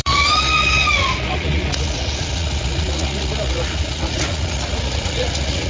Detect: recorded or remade remade